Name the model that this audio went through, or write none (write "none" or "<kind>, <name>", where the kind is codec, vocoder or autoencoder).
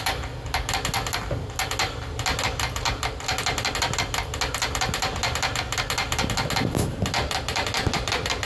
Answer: none